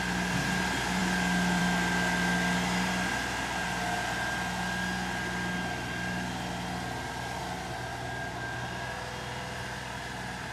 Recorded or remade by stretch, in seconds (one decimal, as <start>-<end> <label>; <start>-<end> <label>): 0.0-10.5 recorded